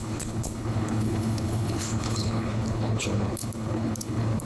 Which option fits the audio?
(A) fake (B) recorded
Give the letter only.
A